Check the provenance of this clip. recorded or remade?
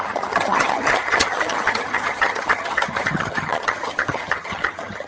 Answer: remade